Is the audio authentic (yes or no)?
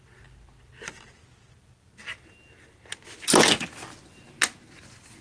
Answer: yes